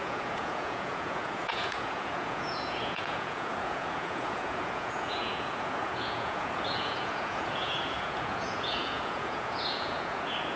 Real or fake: fake